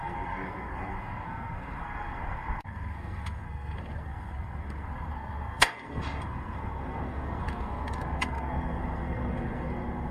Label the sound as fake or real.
fake